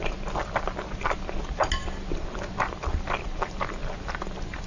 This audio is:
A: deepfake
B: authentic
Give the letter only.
B